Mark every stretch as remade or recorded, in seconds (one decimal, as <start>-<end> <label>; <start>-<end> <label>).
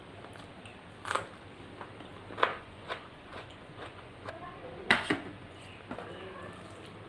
0.0-2.5 recorded; 2.5-5.7 remade; 5.7-7.1 recorded